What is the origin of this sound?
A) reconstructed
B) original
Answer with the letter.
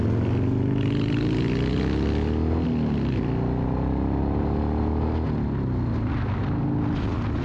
B